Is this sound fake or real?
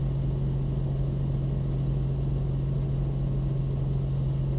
real